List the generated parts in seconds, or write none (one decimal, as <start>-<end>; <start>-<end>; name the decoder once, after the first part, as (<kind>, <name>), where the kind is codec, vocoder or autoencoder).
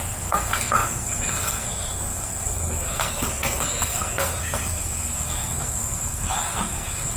0.0-7.2 (codec, SNAC)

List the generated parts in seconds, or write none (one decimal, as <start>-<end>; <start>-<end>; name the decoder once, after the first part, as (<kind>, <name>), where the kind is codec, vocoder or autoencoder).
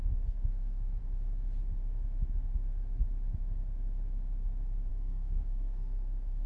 0.0-1.0 (codec, SNAC); 4.9-6.5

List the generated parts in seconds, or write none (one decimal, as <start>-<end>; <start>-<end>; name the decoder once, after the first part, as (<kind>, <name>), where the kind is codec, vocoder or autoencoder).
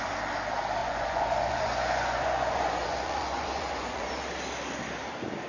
0.8-4.1 (vocoder, Vocos)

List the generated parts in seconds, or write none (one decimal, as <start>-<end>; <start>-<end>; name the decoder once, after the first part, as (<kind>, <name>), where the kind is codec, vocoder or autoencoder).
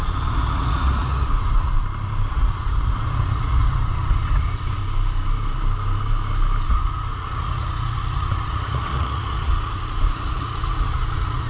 0.0-1.7 (vocoder, Vocos); 2.3-4.8; 6.7-11.5